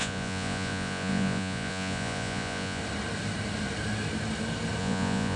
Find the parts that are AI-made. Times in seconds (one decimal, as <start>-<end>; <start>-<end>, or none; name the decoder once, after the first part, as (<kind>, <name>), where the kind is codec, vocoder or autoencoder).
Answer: 0.0-2.8 (vocoder, Vocos); 4.8-5.4